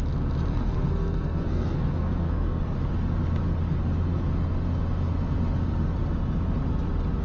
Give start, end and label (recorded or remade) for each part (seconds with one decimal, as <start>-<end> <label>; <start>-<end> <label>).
0.0-0.5 recorded; 0.5-2.6 remade; 2.6-7.2 recorded